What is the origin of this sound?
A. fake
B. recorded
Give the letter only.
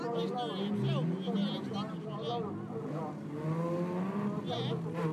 B